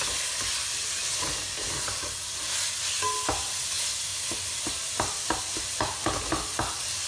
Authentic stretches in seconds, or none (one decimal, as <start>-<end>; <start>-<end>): 0.0-7.1